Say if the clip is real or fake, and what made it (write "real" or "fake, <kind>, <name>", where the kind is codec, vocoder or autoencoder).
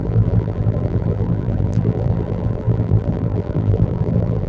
fake, vocoder, BigVGAN v2